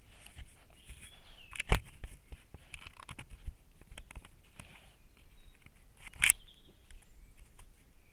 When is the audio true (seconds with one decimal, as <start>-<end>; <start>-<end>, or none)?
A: 0.0-8.1